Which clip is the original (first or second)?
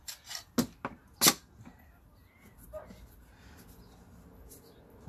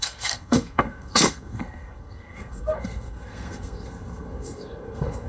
first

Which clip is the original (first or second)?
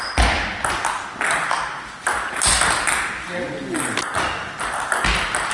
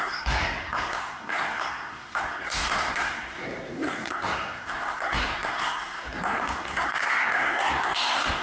first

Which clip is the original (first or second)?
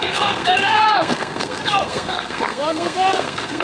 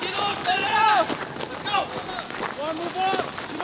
second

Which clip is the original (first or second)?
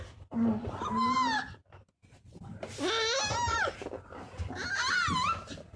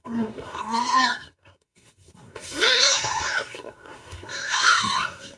first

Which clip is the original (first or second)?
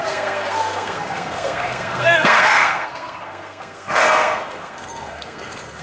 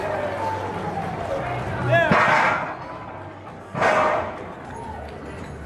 second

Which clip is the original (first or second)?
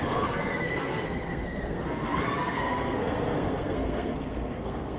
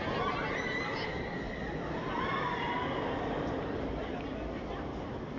second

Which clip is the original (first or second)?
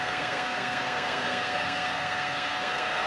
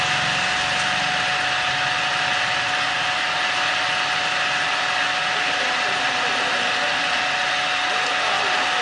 second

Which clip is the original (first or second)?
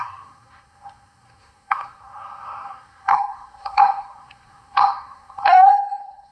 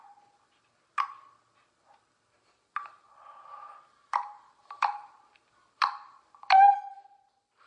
second